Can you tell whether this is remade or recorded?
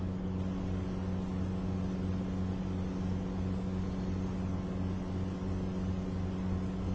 recorded